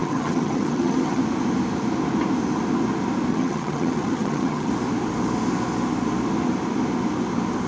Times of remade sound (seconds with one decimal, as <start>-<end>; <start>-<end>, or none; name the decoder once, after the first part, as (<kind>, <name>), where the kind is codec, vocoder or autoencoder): 0.0-1.2 (vocoder, HiFi-GAN); 3.3-4.7

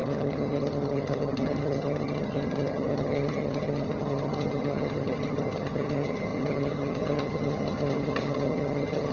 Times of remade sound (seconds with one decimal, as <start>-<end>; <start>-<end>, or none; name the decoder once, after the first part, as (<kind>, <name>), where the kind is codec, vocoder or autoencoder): 0.0-9.1 (vocoder, HiFi-GAN)

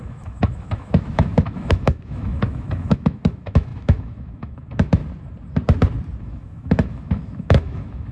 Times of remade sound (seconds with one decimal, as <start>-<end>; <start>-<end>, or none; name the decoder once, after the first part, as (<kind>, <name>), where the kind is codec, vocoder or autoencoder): 0.0-5.0 (autoencoder, DAC-VAE); 6.2-8.1

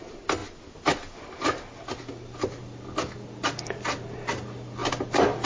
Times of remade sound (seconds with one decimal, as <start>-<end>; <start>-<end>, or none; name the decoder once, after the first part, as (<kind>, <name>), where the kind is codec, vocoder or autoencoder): none